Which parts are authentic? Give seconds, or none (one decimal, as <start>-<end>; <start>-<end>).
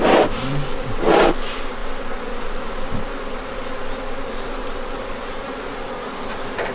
0.0-6.7